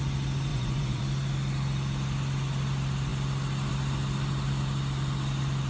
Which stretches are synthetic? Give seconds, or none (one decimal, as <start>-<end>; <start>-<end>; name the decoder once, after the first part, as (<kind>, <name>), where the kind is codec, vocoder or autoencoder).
0.5-1.0 (vocoder, Vocos)